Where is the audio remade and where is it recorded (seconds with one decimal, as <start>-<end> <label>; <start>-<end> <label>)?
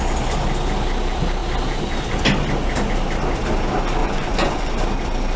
0.0-4.0 recorded; 4.0-4.7 remade; 4.7-5.4 recorded